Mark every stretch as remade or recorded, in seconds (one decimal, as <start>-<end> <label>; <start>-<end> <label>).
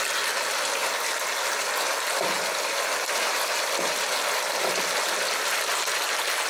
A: 0.0-6.5 recorded